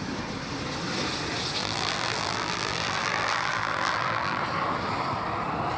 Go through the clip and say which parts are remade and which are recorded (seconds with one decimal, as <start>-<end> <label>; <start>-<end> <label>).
0.0-1.6 recorded; 1.6-4.4 remade; 4.4-5.8 recorded